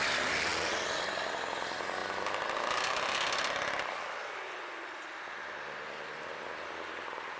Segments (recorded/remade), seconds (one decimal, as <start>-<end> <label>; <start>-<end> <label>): 0.0-7.4 recorded